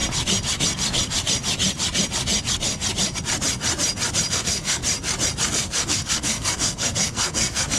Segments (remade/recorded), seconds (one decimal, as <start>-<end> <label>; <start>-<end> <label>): 0.0-4.3 recorded; 4.3-4.8 remade; 4.8-5.5 recorded; 5.5-7.8 remade